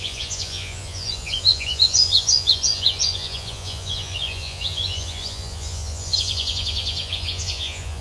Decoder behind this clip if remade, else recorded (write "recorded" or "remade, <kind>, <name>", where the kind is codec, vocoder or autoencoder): remade, vocoder, Vocos